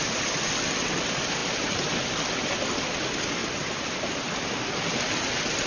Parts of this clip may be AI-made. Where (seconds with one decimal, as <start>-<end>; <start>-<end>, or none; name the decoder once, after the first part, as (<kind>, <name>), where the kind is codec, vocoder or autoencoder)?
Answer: 3.4-4.5 (vocoder, BigVGAN v2)